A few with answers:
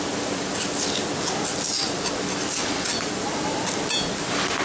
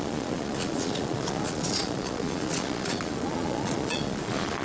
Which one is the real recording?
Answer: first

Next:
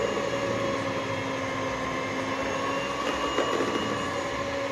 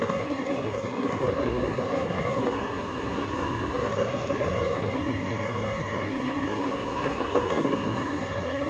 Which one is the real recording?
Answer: first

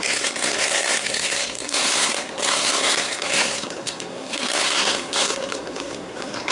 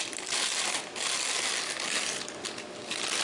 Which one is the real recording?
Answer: second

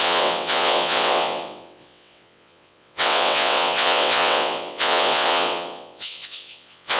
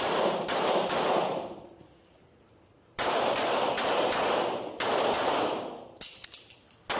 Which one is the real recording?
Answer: second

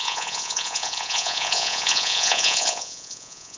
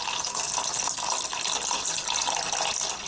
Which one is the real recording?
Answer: second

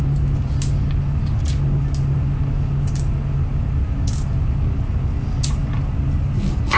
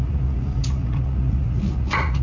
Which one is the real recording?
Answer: first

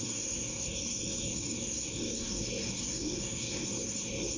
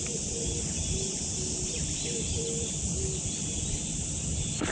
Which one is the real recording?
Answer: second